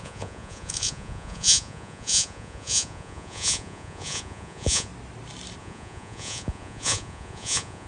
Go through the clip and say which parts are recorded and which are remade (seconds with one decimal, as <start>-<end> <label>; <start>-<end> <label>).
0.0-4.9 remade; 4.9-5.6 recorded; 5.6-7.9 remade